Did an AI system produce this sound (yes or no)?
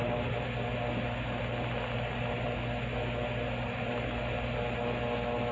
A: no